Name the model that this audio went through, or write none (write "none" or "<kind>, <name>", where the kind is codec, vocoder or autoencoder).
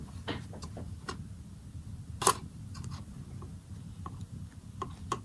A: none